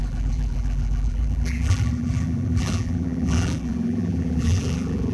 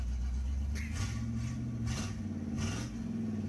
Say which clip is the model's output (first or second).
first